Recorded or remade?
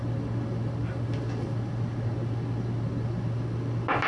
recorded